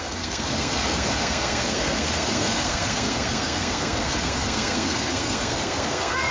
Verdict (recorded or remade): remade